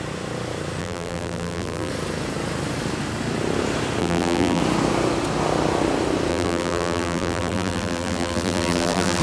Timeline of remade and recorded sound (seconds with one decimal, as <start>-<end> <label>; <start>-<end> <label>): 0.0-0.8 recorded; 0.8-1.9 remade; 1.9-4.0 recorded; 4.0-4.6 remade; 4.6-6.3 recorded; 6.3-9.2 remade